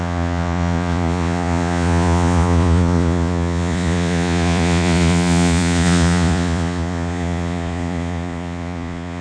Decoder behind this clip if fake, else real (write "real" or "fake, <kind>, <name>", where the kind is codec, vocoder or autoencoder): fake, vocoder, Vocos